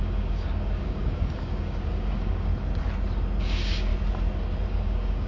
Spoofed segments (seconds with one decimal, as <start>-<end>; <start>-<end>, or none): 0.0-2.5; 3.4-3.9; 4.7-5.3